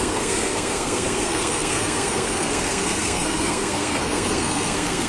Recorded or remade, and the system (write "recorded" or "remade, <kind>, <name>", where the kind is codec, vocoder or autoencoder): remade, codec, SNAC